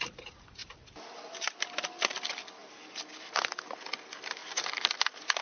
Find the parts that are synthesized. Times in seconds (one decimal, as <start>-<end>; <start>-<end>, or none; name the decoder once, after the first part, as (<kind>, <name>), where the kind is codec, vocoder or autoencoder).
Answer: none